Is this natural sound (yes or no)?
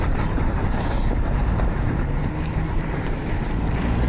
no